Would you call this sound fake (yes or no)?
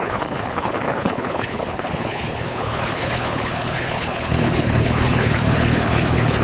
yes